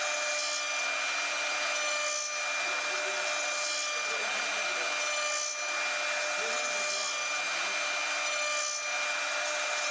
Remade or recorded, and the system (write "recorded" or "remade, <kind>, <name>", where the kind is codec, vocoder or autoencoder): recorded